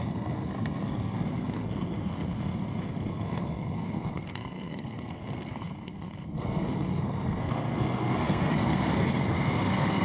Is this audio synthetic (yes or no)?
yes